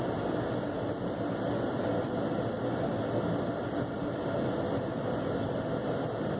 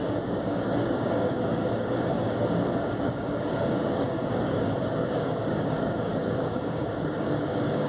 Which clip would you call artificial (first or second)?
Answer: second